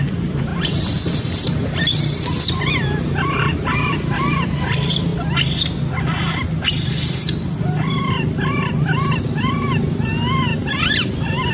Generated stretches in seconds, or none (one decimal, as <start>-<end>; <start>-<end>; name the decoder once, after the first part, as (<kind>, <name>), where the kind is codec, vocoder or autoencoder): 0.0-5.1 (vocoder, BigVGAN v2); 7.6-11.5